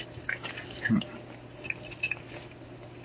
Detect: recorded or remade recorded